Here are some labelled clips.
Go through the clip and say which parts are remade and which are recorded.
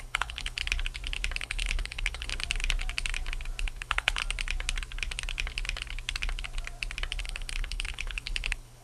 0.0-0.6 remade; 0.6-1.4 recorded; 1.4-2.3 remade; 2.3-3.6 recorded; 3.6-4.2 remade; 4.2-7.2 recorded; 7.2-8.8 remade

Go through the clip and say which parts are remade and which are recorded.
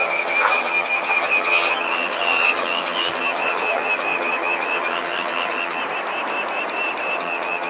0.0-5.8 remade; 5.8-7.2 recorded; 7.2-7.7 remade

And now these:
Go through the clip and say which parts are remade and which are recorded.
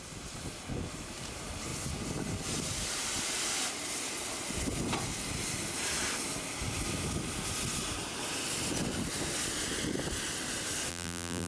0.0-10.9 recorded; 10.9-11.5 remade